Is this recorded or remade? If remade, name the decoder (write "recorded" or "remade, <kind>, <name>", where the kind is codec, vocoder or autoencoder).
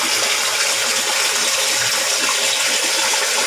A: recorded